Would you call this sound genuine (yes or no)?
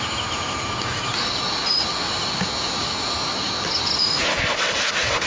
yes